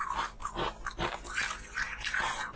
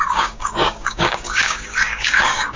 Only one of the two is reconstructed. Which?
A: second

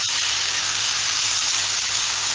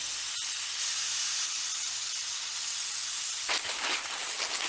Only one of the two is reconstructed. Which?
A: first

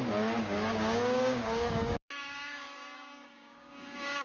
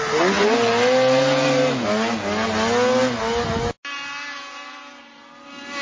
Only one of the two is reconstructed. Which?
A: first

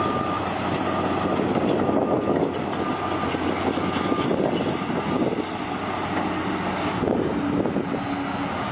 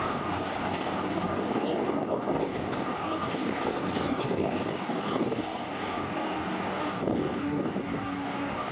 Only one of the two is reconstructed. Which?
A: second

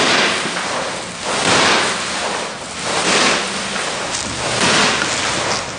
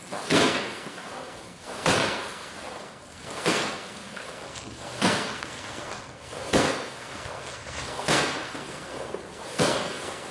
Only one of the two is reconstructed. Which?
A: second